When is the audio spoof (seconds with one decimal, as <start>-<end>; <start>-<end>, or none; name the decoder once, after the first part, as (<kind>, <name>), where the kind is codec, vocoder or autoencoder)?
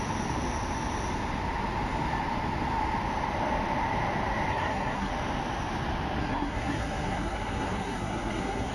4.5-5.1 (codec, SNAC); 6.2-8.7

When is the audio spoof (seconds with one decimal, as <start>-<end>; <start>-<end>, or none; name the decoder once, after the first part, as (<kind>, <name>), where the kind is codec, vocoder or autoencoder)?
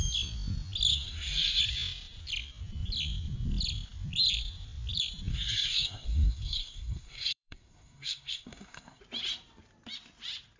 0.9-1.6 (codec, SNAC); 5.3-9.0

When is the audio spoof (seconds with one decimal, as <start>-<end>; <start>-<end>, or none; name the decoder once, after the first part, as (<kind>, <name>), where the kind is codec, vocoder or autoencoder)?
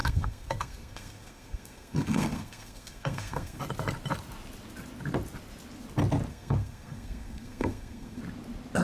0.0-3.6 (codec, SNAC); 6.3-8.2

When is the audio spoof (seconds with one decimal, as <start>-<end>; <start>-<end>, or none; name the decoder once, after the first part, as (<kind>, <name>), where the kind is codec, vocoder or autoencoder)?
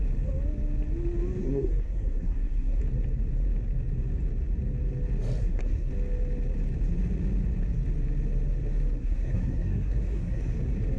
1.4-2.8 (codec, SNAC); 5.4-5.9; 9.0-10.4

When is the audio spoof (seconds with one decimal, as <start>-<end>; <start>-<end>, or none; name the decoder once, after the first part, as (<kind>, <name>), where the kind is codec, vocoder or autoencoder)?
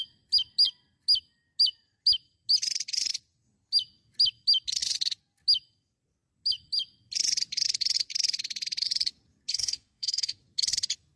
9.5-10.4 (codec, SNAC)